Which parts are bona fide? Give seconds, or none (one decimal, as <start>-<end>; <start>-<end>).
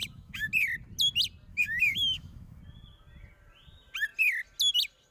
0.5-1.5; 2.6-5.1